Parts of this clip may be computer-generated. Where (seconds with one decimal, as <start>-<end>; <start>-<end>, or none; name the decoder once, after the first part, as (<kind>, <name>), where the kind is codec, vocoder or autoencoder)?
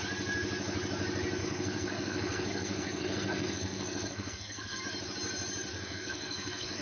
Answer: 1.4-4.8 (codec, SNAC); 5.7-6.8